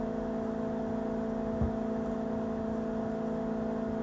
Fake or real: real